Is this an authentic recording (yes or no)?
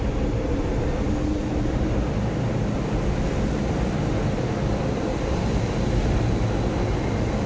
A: yes